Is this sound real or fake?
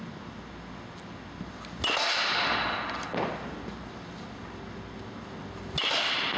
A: real